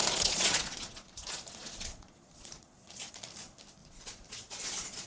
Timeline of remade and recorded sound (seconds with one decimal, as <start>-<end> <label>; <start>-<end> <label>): 0.0-3.1 remade; 3.1-3.8 recorded; 3.8-5.1 remade